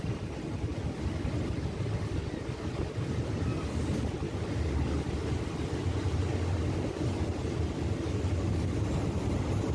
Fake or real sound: real